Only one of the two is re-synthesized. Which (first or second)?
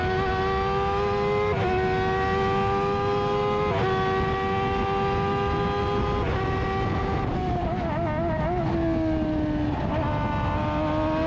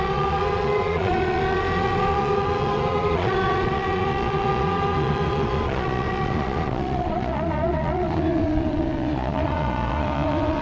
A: second